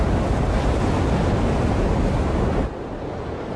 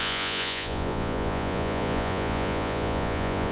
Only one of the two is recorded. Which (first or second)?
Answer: first